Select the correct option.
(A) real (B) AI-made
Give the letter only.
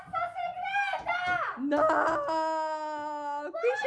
A